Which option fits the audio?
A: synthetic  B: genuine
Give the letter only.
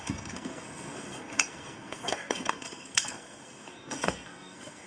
A